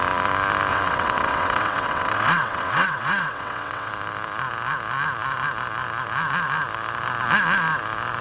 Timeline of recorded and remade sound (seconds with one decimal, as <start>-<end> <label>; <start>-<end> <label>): 0.0-0.7 recorded; 0.7-3.9 remade; 3.9-8.2 recorded